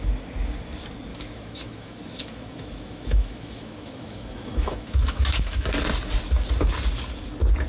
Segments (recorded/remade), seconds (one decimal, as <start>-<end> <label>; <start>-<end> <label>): 0.0-1.1 recorded; 1.1-5.7 remade; 5.7-7.7 recorded